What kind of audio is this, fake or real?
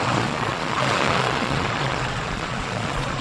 fake